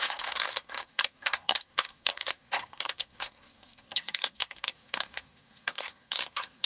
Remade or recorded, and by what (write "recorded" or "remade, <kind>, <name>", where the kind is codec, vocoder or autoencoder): remade, codec, SNAC